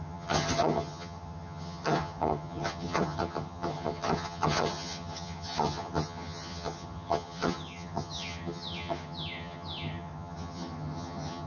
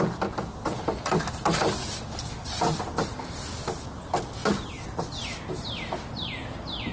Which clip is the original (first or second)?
second